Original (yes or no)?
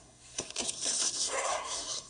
no